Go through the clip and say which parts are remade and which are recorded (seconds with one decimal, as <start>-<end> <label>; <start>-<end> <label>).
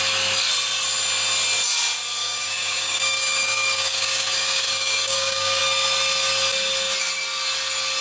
0.0-2.2 recorded; 2.2-5.6 remade; 5.6-8.0 recorded